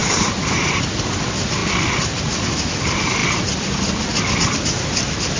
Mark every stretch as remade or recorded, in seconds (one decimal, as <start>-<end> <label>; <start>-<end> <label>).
0.0-5.4 recorded